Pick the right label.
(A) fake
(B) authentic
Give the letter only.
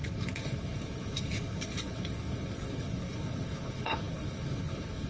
A